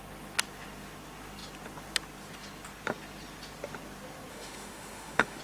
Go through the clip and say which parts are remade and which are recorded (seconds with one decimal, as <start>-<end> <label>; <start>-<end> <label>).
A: 0.0-4.3 recorded; 4.3-5.4 remade